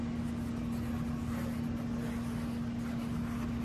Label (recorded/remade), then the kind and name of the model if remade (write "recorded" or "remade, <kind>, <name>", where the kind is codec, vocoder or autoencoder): recorded